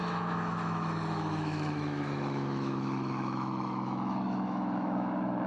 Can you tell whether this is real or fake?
fake